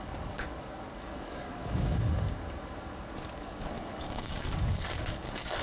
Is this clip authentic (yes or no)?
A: no